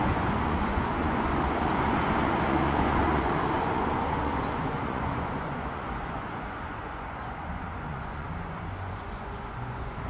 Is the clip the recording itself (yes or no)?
no